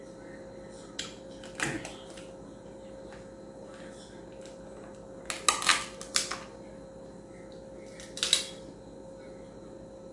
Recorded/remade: recorded